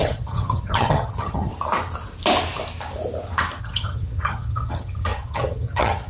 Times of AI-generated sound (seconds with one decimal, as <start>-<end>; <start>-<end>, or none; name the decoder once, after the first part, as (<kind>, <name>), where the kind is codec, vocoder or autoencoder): 0.0-1.5 (vocoder, HiFi-GAN); 3.6-6.1